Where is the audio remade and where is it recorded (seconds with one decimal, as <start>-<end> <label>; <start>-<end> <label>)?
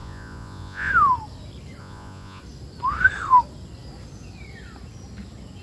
0.0-0.9 remade; 0.9-1.8 recorded; 1.8-2.4 remade; 2.4-5.6 recorded